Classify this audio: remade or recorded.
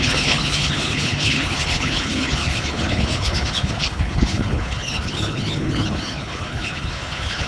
remade